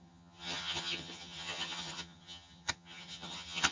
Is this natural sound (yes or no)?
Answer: no